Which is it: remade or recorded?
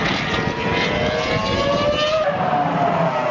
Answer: recorded